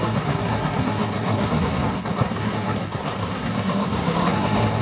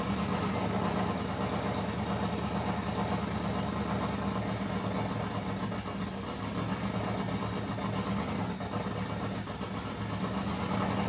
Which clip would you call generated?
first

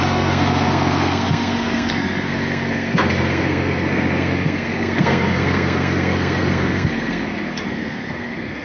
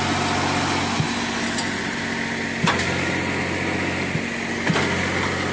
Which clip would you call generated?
first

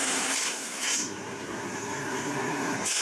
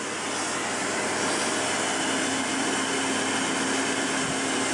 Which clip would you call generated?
first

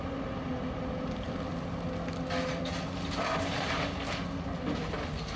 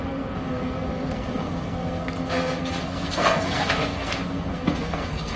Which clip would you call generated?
second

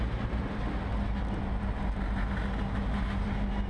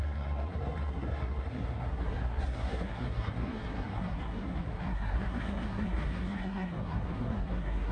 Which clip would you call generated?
second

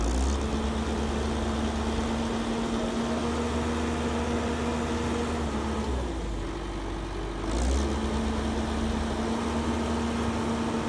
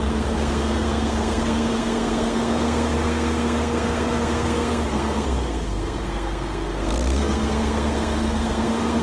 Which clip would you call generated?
second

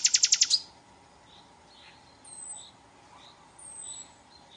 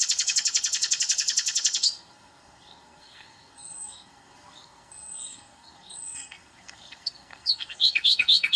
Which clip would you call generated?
second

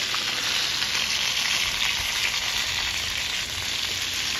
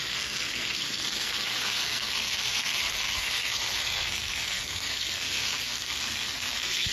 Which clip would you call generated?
second